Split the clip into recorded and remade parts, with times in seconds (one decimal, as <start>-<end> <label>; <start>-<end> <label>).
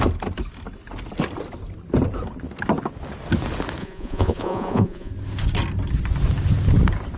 0.0-3.8 recorded; 3.8-5.1 remade; 5.1-7.2 recorded